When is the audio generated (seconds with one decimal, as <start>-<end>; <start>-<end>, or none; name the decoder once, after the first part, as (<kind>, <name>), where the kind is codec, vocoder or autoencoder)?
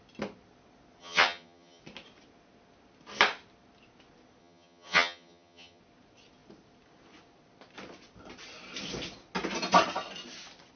1.0-1.8 (vocoder, HiFi-GAN); 4.4-5.8